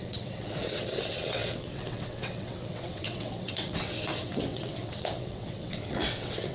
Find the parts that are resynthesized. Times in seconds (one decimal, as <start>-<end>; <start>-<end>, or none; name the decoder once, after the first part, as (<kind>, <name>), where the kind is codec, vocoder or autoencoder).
0.0-6.5 (vocoder, WaveNeXt)